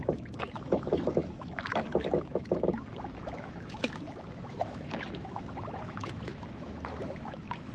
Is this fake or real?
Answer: fake